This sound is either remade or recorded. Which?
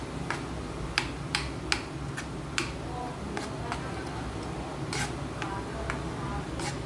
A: recorded